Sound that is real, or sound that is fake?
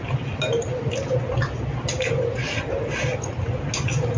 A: real